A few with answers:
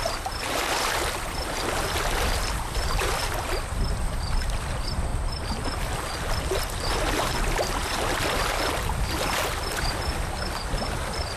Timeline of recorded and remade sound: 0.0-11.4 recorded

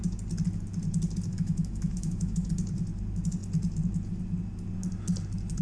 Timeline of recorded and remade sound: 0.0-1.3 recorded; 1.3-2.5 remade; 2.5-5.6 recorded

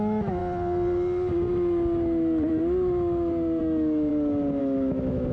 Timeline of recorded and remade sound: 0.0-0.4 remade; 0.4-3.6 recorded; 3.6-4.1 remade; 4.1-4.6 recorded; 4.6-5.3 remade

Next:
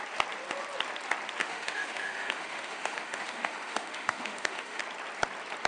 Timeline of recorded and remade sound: 0.0-1.4 recorded; 1.4-4.8 remade; 4.8-5.7 recorded